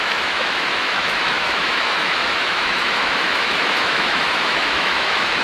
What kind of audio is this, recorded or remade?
remade